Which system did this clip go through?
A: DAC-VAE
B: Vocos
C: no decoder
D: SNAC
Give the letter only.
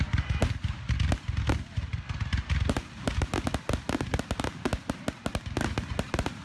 C